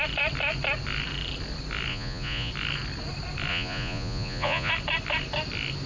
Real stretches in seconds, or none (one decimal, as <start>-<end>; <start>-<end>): 0.0-1.9; 2.5-3.5; 4.7-5.9